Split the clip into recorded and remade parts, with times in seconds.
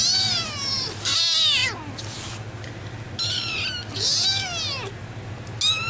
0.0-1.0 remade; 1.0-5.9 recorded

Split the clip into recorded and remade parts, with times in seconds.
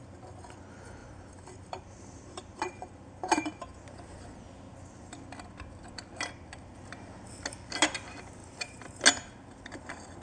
0.0-1.0 recorded; 1.0-3.6 remade; 3.6-8.4 recorded; 8.4-9.0 remade; 9.0-10.2 recorded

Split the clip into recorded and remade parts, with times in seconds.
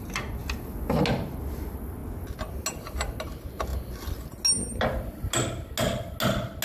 0.0-6.6 recorded